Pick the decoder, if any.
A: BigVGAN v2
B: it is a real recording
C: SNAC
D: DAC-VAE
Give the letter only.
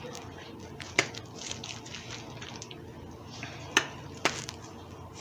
B